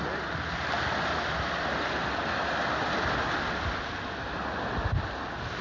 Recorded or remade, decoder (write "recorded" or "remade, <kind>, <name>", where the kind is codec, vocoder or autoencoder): recorded